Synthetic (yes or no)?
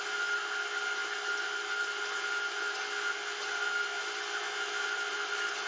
no